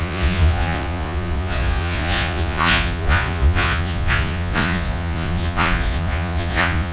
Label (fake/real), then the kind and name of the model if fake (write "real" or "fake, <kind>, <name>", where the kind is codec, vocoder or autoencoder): fake, vocoder, Vocos